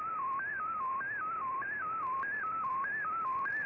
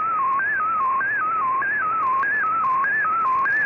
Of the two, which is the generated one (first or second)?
first